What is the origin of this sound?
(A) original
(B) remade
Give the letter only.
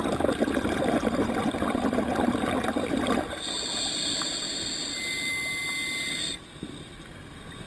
A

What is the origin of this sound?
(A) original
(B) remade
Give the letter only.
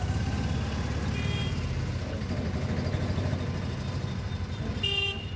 A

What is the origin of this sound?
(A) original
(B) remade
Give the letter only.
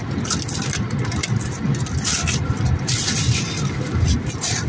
A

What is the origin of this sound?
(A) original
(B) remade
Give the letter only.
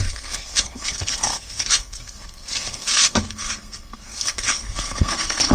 B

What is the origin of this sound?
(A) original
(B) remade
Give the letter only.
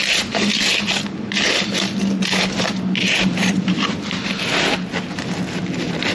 A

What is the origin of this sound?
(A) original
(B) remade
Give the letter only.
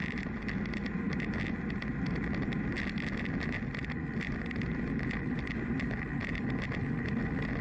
A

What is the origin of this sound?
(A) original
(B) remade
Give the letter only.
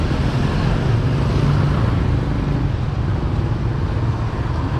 A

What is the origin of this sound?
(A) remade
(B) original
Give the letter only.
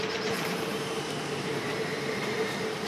A